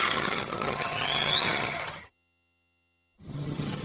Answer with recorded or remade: remade